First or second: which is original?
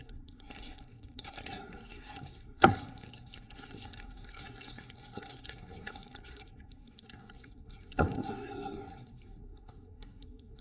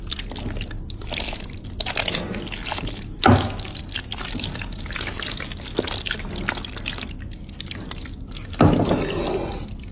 second